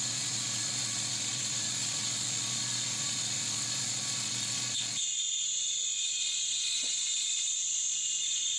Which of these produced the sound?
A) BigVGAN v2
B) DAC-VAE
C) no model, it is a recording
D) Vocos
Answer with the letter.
D